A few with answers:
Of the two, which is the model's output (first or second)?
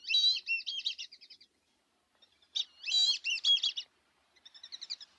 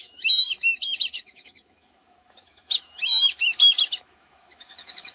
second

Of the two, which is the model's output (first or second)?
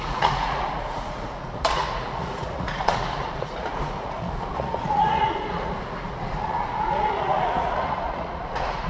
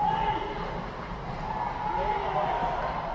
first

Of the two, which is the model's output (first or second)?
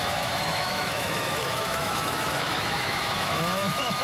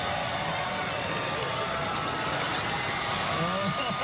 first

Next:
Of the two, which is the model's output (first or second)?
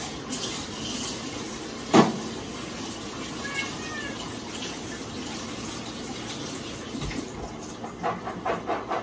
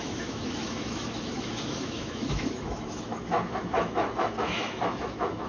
second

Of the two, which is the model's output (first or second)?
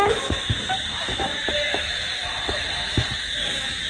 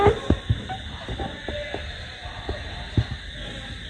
first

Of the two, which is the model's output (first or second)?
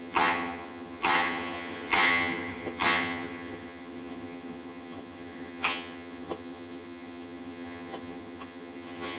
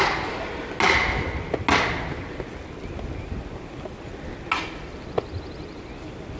first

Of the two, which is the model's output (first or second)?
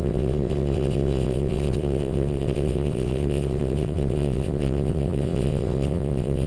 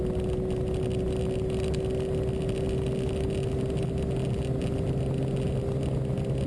first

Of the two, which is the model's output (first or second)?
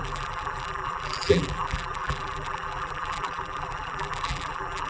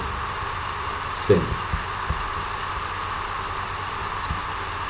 first